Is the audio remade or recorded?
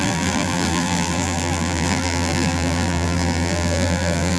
remade